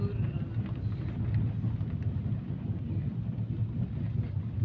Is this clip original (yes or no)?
yes